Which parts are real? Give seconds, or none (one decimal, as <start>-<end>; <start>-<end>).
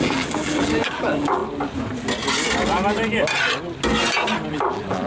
1.4-4.5